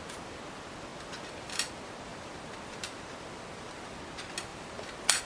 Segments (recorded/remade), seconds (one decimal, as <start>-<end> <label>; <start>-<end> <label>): 0.0-2.1 recorded; 2.1-3.9 remade; 3.9-4.5 recorded; 4.5-5.2 remade